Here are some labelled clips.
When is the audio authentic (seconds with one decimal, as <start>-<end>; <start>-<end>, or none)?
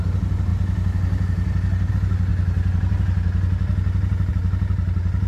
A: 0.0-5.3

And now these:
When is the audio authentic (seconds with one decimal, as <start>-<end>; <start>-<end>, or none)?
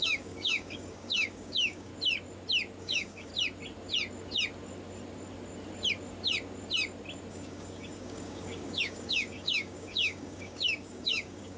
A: 1.9-2.8; 3.3-7.3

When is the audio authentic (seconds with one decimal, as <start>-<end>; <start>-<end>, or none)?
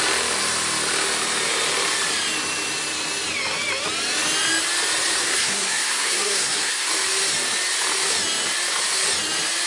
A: 0.0-5.2; 6.9-9.7